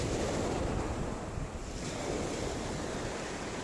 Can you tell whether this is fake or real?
real